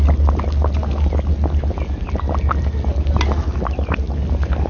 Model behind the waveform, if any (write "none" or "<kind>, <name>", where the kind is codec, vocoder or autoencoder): none